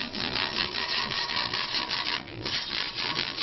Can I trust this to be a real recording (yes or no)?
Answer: no